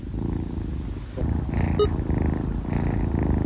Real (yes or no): yes